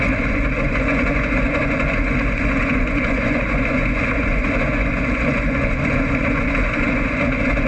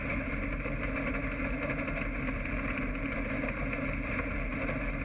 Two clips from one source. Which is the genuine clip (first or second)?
second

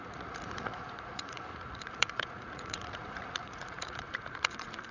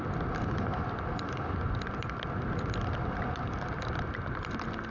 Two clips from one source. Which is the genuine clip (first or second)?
second